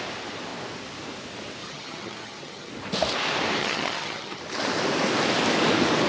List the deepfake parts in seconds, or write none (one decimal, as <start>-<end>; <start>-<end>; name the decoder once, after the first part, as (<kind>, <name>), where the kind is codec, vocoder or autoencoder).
1.6-2.7 (vocoder, HiFi-GAN); 3.6-4.4